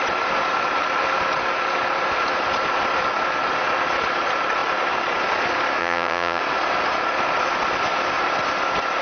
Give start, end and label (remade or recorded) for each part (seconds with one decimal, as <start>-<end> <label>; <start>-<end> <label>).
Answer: 0.0-5.8 recorded; 5.8-6.4 remade; 6.4-9.0 recorded